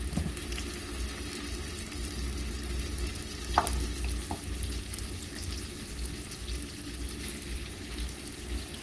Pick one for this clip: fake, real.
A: real